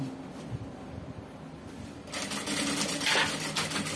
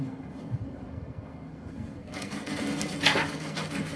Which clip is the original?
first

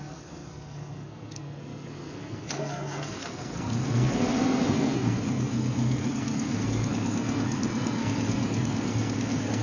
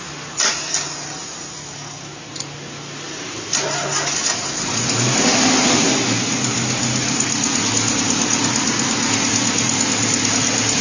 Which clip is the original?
second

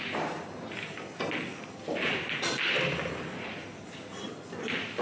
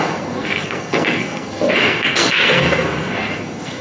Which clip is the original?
first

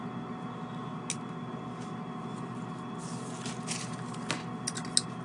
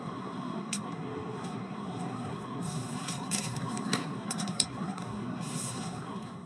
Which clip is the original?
first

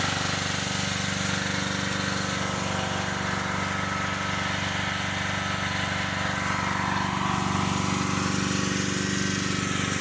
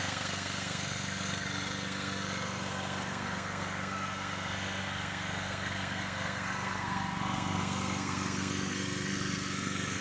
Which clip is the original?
first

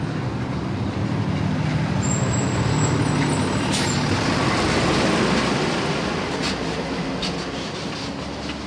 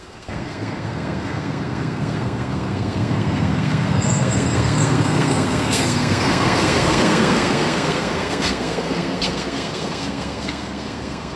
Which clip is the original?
first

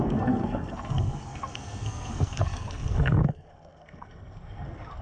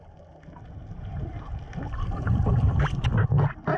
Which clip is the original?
second